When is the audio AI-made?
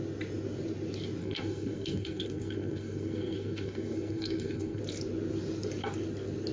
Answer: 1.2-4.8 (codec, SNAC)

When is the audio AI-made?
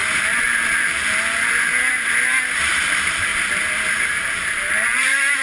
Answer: 1.5-3.3 (vocoder, BigVGAN v2); 4.0-5.4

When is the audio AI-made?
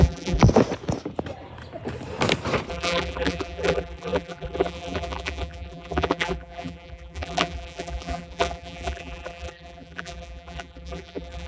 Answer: 0.0-0.4 (vocoder, BigVGAN v2); 2.7-11.5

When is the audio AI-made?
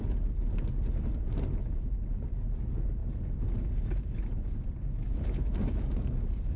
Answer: none